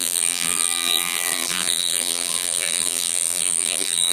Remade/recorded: remade